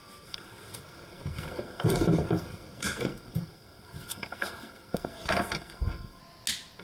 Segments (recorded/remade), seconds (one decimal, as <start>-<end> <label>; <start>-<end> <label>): 0.0-6.2 remade; 6.2-6.8 recorded